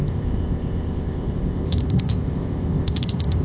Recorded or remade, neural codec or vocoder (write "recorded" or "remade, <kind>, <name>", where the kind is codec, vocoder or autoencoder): remade, codec, ZipCodec